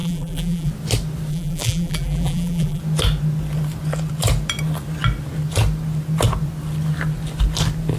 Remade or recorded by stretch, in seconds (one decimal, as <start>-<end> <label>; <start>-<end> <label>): 0.0-0.7 remade; 0.7-1.3 recorded; 1.3-2.8 remade; 2.8-8.0 recorded